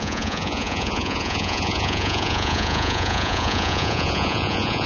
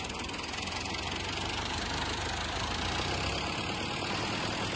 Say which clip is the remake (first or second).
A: first